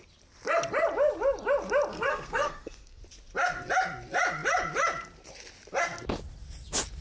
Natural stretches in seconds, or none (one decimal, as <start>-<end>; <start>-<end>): 0.0-1.9; 3.0-7.0